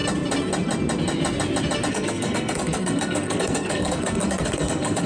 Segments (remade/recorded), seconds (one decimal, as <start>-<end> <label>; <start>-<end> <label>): 0.0-1.9 recorded; 1.9-5.1 remade